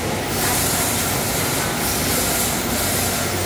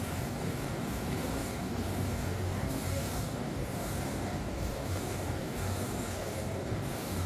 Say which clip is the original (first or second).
first